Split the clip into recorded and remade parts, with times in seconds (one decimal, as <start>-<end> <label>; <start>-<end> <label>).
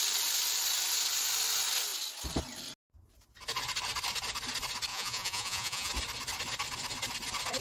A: 0.0-4.9 recorded; 4.9-5.9 remade; 5.9-7.6 recorded